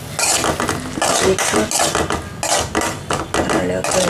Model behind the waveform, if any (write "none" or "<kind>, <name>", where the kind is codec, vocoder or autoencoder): none